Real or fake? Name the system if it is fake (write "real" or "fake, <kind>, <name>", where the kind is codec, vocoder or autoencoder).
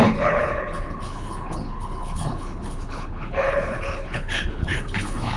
fake, codec, HILCodec